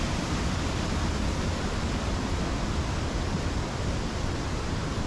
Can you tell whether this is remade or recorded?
remade